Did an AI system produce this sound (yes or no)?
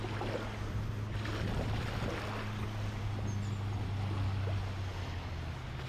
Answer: no